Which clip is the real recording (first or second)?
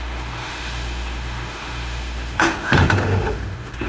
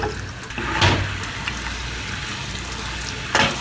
second